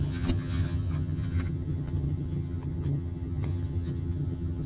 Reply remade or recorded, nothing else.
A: remade